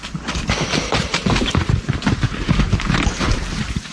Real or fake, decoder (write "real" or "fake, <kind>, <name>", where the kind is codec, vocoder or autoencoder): real